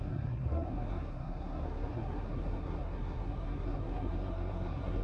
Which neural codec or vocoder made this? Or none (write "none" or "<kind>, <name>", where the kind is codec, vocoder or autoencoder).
codec, SNAC